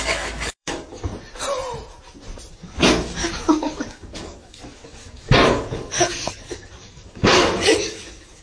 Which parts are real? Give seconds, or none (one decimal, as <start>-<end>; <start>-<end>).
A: 1.1-2.5